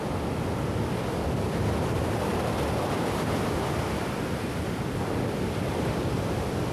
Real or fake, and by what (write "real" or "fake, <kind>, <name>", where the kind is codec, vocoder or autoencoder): real